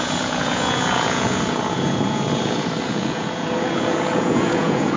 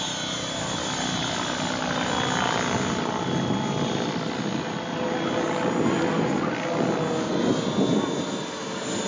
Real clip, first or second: second